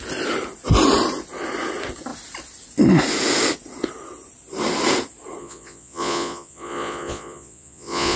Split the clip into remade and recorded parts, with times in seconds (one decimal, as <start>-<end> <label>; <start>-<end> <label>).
0.0-5.4 recorded; 5.4-8.2 remade